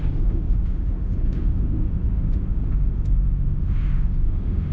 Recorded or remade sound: remade